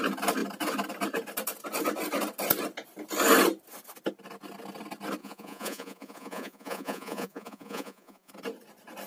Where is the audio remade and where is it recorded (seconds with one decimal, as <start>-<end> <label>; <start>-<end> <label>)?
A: 0.0-5.2 recorded; 5.2-8.3 remade; 8.3-9.1 recorded